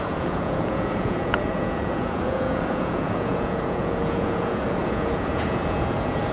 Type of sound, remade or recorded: remade